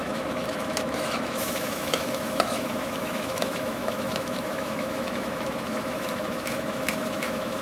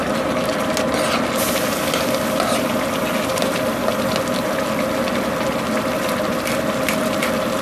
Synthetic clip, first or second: first